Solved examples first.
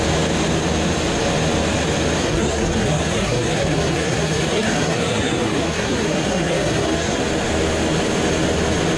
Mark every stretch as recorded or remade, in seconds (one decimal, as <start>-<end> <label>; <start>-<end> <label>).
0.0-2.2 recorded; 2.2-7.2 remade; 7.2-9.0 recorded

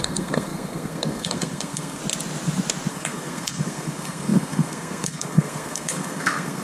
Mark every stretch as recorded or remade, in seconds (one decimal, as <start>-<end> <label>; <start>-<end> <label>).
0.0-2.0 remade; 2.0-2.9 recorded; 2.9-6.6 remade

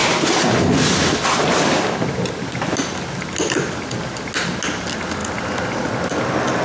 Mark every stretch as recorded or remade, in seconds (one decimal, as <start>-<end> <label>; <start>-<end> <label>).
0.0-6.6 recorded

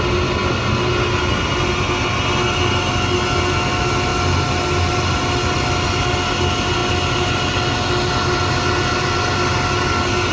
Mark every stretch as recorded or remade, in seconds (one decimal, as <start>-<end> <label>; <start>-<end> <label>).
0.0-10.3 recorded

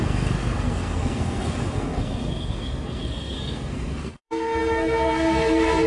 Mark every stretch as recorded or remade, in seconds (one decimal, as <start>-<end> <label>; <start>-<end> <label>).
0.0-5.9 remade

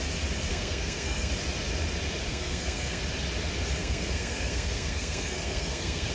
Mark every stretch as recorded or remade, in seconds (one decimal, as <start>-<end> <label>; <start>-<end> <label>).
0.0-0.5 recorded; 0.5-1.3 remade; 1.3-2.3 recorded; 2.3-3.0 remade; 3.0-3.8 recorded; 3.8-6.1 remade